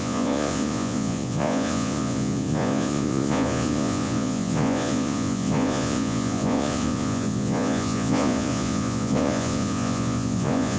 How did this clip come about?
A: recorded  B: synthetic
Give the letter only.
B